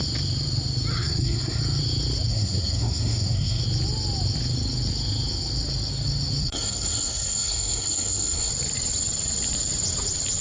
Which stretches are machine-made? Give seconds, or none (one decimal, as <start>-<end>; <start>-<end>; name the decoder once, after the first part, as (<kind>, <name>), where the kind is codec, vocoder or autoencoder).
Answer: 0.9-1.6 (codec, SNAC); 2.3-3.6; 6.4-8.5